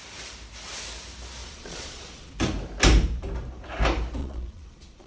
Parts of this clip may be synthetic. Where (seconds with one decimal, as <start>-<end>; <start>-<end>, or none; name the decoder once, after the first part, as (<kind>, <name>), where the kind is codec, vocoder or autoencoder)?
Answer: 1.4-2.3 (vocoder, Vocos); 4.2-5.1

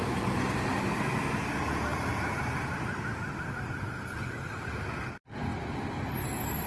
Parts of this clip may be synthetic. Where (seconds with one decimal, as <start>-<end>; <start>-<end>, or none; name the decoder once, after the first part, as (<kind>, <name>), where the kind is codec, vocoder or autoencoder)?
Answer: none

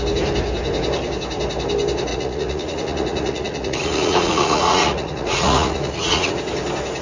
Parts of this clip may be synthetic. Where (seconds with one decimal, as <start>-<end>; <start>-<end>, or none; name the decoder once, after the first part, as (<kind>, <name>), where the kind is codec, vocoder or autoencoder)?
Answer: 2.1-6.3 (vocoder, Vocos)

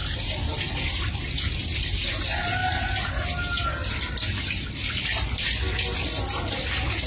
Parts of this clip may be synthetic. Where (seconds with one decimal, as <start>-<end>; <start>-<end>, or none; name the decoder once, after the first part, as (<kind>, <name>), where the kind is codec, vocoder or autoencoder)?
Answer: none

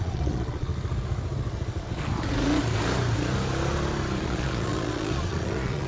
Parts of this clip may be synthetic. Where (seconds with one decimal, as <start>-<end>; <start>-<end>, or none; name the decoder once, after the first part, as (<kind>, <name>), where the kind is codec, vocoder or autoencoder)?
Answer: 0.0-0.7 (vocoder, Vocos); 4.2-5.9